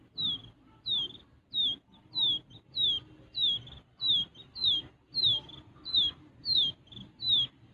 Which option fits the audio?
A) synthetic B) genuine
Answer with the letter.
B